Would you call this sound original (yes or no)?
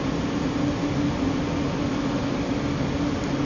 yes